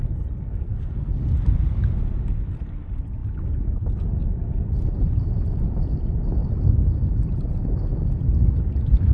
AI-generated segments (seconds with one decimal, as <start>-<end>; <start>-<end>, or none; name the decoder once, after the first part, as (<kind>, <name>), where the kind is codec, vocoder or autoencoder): 0.5-1.1 (codec, SNAC)